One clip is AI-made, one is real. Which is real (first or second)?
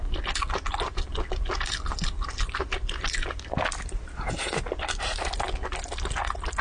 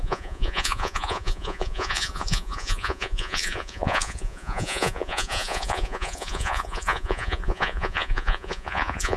first